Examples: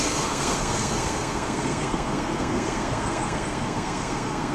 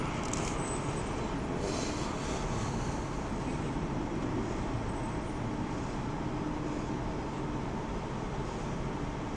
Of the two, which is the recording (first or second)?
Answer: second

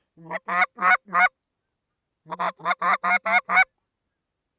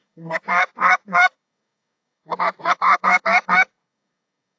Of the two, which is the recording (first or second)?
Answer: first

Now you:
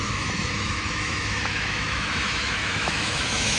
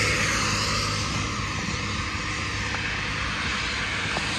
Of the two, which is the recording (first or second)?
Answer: second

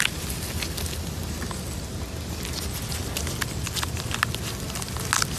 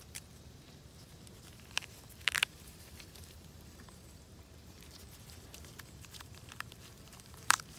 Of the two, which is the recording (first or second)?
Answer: first